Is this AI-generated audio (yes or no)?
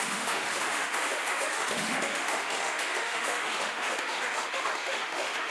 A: yes